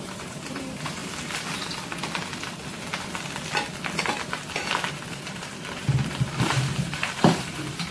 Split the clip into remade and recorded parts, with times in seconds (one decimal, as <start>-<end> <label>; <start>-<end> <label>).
0.0-1.0 remade; 1.0-5.1 recorded; 5.1-7.9 remade